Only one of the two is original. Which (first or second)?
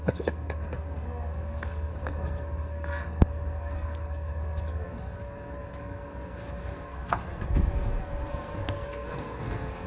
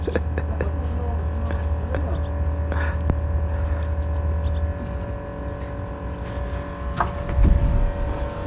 second